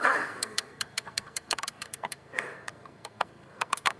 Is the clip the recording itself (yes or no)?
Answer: no